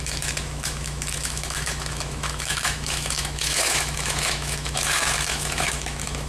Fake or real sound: fake